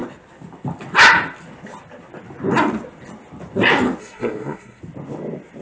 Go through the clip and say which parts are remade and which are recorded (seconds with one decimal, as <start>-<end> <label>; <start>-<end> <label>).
0.0-4.0 recorded; 4.0-4.8 remade; 4.8-5.6 recorded